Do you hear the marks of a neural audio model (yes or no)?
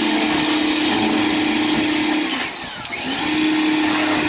no